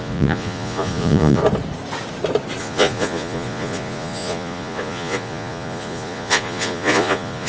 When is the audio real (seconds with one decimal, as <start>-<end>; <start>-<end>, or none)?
1.4-2.6